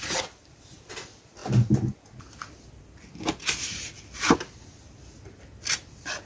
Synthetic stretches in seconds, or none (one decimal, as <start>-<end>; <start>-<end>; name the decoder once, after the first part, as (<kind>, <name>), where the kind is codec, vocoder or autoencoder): none